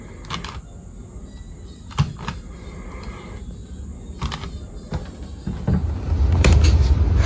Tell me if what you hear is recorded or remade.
recorded